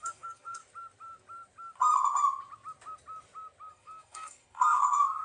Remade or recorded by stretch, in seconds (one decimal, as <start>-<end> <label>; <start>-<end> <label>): 0.0-0.6 remade; 0.6-3.7 recorded; 3.7-5.2 remade